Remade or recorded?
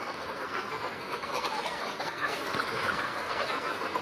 remade